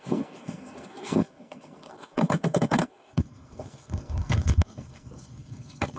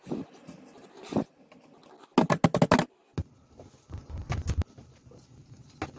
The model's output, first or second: first